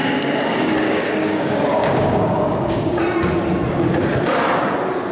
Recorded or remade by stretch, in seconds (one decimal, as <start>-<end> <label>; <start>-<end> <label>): 0.0-3.0 remade; 3.0-5.1 recorded